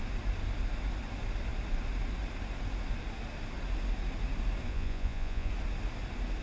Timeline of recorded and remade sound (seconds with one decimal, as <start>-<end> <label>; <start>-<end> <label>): 0.0-4.7 recorded; 4.7-5.5 remade; 5.5-6.4 recorded